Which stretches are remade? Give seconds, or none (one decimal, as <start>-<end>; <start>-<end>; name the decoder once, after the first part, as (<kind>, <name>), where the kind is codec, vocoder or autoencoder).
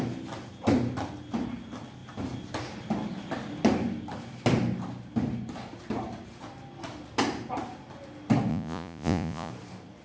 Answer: 8.5-9.5 (vocoder, Vocos)